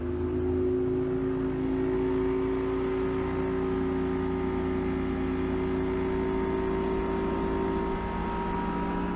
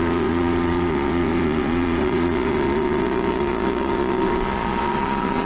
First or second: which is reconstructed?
second